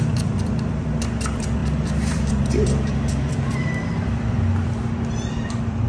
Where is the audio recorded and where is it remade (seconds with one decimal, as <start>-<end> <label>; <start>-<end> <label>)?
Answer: 0.0-5.9 remade